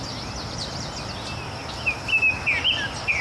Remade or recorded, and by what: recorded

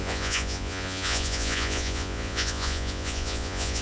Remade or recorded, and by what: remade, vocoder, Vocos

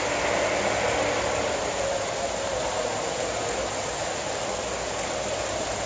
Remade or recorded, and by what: recorded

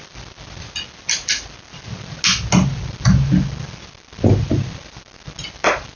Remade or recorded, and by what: recorded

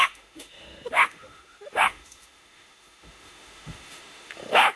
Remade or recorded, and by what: remade, autoencoder, DAC-VAE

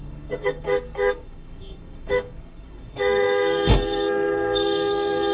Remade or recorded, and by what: remade, codec, SNAC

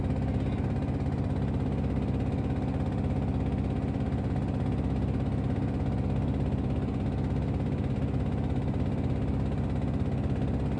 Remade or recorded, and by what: recorded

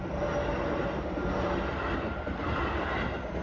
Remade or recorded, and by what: recorded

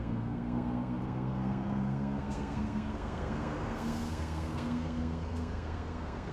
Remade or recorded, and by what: remade, codec, SNAC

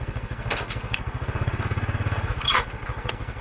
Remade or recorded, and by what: remade, codec, SNAC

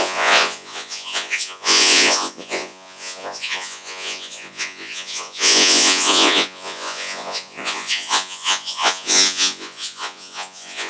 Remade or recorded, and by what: remade, vocoder, Vocos